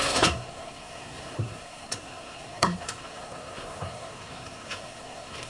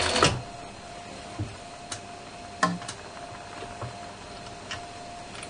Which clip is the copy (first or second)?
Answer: first